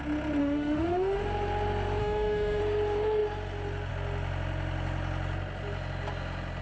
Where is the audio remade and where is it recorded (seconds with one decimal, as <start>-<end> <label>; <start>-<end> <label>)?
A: 0.0-0.4 recorded; 0.4-1.2 remade; 1.2-2.0 recorded; 2.0-2.6 remade; 2.6-6.6 recorded

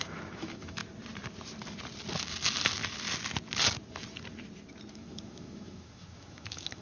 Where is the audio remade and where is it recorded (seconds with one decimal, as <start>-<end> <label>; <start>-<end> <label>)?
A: 0.0-0.8 remade; 0.8-4.9 recorded; 4.9-6.8 remade